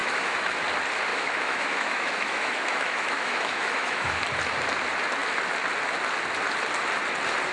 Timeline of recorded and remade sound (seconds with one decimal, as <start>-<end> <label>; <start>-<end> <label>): 0.0-0.5 remade; 0.5-1.1 recorded; 1.1-4.2 remade; 4.2-7.5 recorded